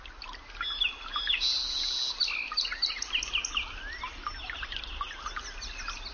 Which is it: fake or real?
real